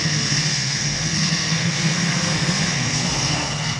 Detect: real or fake fake